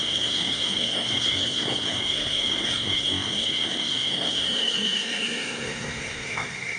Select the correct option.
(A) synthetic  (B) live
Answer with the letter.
A